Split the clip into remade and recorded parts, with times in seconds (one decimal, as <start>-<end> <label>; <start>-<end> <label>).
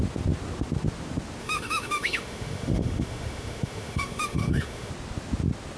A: 0.0-1.4 recorded; 1.4-4.9 remade; 4.9-5.8 recorded